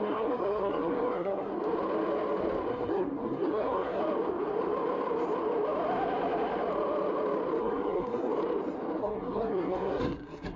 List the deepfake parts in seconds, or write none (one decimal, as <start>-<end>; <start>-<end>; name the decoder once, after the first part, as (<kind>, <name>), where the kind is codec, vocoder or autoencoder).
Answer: 0.0-1.5 (codec, SNAC); 2.7-4.0; 7.6-8.3; 9.0-10.6